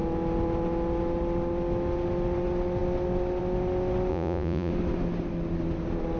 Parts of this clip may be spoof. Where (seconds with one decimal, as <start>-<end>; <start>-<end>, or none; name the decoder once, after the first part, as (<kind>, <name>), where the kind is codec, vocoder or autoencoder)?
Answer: 4.1-4.7 (vocoder, Vocos)